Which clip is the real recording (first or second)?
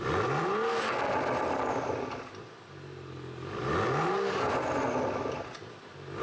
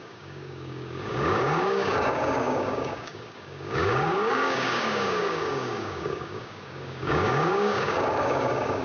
first